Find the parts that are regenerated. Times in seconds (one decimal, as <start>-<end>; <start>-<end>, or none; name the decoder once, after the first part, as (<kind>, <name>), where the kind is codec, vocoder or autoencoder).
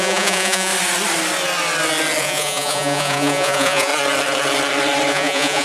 0.0-0.7 (vocoder, Vocos); 2.2-3.9; 5.1-5.6